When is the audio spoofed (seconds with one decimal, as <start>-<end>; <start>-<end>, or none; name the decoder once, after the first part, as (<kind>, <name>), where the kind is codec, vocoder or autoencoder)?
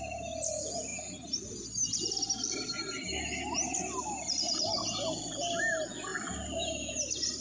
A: none